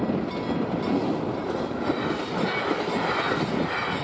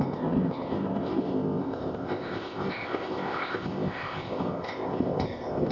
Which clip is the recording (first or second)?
first